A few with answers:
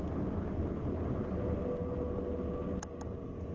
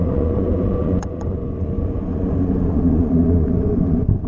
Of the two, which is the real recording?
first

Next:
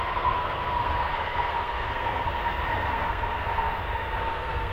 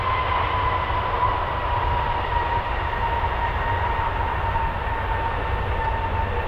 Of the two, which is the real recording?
second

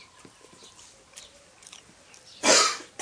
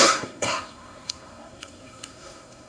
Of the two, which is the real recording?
first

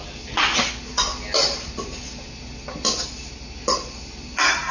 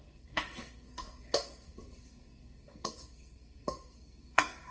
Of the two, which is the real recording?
first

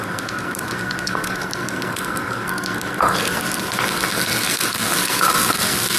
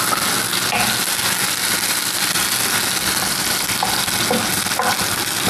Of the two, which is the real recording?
second